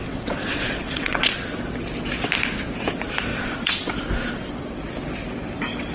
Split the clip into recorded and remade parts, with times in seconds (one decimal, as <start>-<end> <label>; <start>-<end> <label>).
0.0-1.3 remade; 1.3-3.3 recorded; 3.3-3.9 remade; 3.9-5.9 recorded